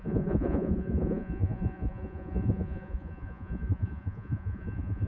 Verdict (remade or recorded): remade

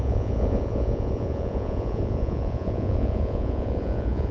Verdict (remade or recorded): remade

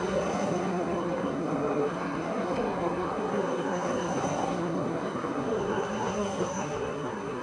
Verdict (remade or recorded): remade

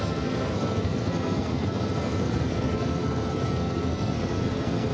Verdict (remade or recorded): remade